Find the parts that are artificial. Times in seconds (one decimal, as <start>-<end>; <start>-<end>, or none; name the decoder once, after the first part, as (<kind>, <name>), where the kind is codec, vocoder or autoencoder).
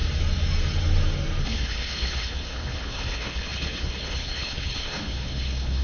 1.4-5.8 (codec, HILCodec)